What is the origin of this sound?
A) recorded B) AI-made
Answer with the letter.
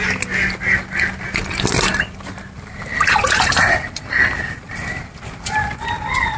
A